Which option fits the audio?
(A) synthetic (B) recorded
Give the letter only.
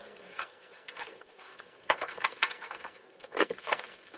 A